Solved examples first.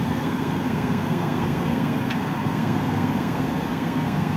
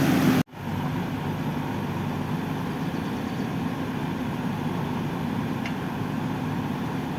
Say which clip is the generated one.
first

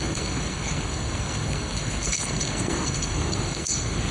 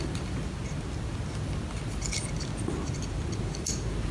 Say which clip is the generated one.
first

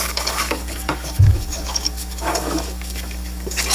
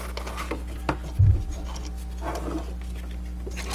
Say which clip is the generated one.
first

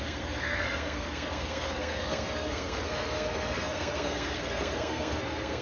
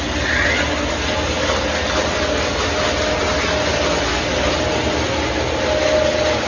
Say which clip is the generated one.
first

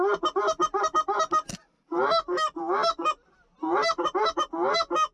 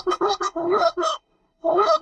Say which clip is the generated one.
second